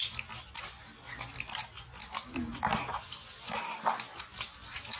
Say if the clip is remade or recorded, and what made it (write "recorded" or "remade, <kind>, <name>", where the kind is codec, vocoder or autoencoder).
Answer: recorded